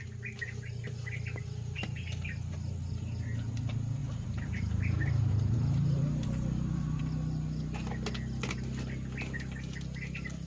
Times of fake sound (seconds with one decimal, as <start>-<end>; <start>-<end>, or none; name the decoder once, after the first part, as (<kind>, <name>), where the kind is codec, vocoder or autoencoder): 4.0-7.0 (vocoder, BigVGAN v2)